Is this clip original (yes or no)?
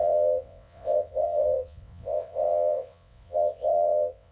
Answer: no